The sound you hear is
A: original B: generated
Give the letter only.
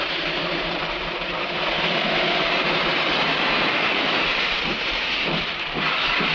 B